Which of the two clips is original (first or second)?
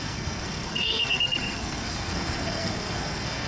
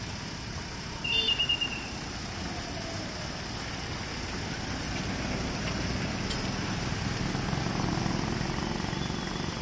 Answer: second